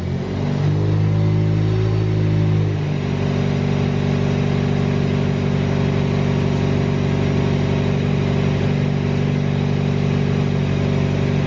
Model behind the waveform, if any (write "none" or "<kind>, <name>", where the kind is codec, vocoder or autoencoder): none